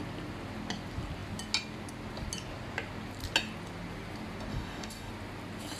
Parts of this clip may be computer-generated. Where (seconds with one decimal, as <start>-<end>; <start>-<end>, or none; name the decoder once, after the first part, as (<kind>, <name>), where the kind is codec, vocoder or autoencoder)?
4.5-5.1 (codec, DAC)